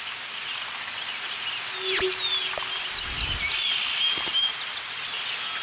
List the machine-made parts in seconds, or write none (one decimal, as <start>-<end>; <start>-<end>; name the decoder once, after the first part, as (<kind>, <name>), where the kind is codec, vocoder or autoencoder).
none